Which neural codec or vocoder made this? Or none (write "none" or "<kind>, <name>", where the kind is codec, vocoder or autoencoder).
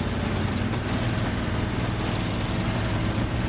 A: none